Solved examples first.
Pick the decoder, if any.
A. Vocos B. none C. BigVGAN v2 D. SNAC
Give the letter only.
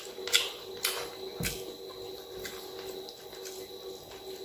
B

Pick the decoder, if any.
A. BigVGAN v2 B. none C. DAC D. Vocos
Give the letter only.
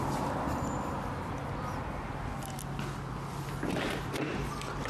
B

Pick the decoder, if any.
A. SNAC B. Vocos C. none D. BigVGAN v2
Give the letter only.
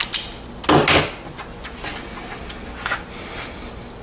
C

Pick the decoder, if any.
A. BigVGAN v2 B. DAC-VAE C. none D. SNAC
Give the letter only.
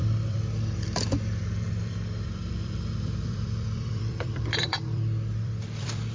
A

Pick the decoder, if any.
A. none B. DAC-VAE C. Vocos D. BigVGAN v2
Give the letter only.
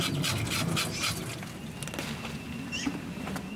A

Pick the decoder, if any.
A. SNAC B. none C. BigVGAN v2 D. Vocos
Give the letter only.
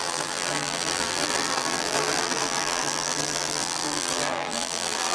C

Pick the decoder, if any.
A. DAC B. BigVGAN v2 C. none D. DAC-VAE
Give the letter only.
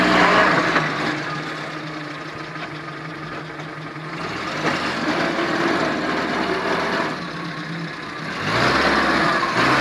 C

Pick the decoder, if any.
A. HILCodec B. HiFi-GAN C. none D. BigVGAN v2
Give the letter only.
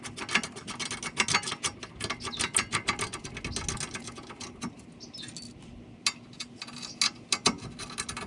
C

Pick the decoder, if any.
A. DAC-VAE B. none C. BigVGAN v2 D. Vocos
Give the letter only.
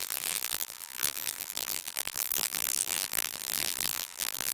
C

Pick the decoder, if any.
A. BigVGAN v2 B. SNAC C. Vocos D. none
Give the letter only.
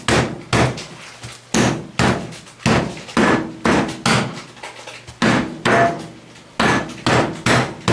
D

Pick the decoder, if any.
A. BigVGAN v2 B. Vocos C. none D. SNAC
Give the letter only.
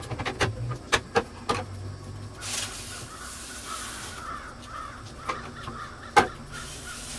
C